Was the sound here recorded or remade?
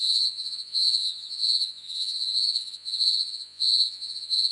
remade